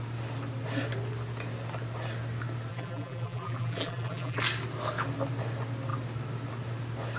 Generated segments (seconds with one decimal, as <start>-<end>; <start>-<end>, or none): 2.7-4.4